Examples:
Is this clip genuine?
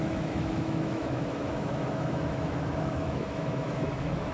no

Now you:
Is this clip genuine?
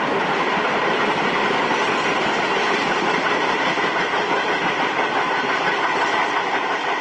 yes